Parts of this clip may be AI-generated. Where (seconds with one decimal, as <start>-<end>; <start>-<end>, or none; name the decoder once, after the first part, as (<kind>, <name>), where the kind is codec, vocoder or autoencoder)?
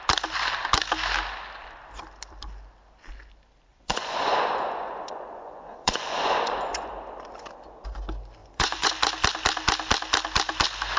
3.7-6.9 (vocoder, Vocos); 8.4-8.9